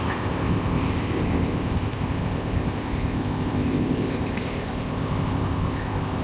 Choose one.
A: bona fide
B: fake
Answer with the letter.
B